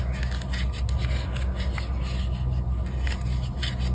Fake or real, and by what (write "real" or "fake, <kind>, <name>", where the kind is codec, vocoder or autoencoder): real